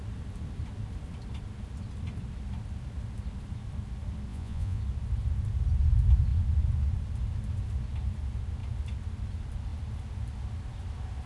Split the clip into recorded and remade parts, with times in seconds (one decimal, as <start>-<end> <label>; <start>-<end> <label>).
0.0-4.3 recorded; 4.3-4.8 remade; 4.8-11.3 recorded